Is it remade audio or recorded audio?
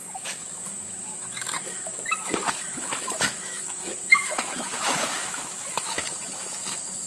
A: remade